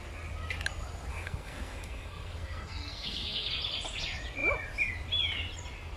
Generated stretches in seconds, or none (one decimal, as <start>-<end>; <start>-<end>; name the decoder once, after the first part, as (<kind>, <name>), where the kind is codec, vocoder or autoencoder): 1.1-3.5 (codec, SNAC)